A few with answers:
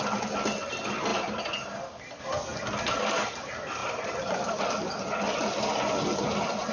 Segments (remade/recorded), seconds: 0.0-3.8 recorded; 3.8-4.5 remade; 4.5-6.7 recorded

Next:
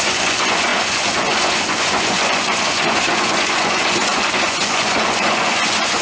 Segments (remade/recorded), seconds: 0.0-6.0 remade

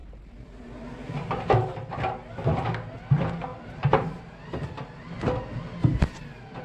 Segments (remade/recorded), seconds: 0.0-3.5 recorded; 3.5-4.2 remade; 4.2-6.6 recorded